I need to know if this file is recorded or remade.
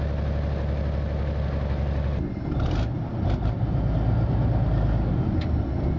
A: recorded